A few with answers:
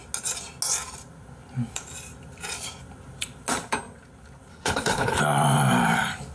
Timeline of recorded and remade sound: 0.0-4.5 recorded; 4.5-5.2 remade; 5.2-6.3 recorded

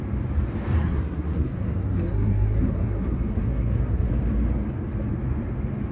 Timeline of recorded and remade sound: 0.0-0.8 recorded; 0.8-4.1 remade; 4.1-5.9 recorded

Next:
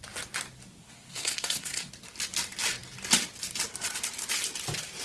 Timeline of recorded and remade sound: 0.0-0.8 recorded; 0.8-1.9 remade; 1.9-5.0 recorded